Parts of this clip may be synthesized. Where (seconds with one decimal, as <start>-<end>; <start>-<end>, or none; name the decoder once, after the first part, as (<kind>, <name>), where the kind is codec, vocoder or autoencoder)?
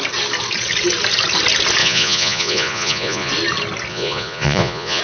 1.8-3.3 (vocoder, Vocos); 3.9-5.0